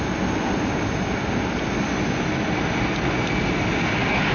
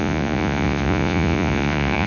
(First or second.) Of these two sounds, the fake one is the second